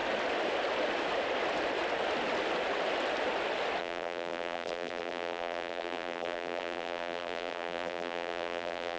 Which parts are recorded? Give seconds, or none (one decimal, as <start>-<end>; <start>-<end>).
0.0-3.8